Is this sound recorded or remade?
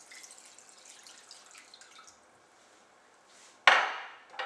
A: recorded